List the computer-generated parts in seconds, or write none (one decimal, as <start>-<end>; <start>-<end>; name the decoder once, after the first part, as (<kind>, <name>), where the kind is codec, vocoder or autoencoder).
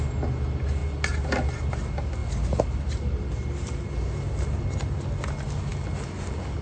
none